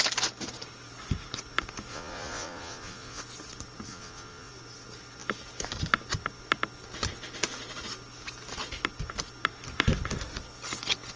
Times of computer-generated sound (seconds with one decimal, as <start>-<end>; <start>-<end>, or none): 1.9-3.2; 3.9-4.5